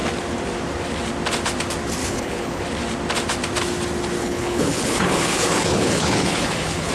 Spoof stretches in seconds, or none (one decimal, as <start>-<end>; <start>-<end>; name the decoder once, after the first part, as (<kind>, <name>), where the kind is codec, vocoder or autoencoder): 2.0-2.6 (codec, HILCodec); 4.2-6.9